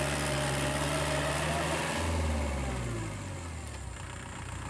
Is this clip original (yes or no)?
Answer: yes